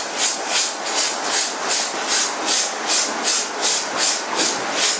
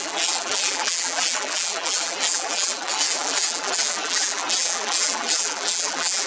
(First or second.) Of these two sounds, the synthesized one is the second